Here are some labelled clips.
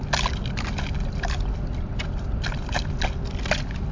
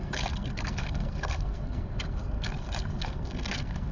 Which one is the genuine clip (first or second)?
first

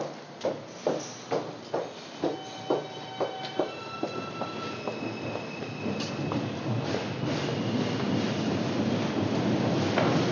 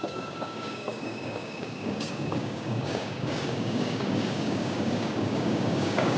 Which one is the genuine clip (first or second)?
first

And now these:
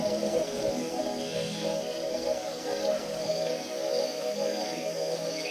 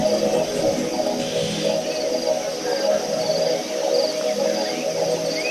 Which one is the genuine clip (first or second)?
second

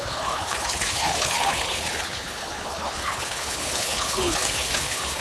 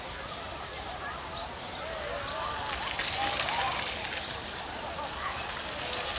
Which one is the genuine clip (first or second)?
second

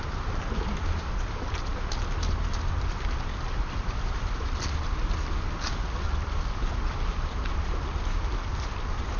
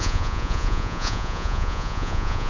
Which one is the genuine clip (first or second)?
first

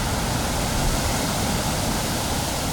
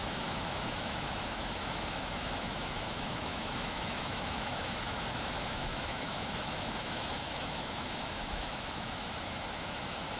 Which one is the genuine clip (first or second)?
first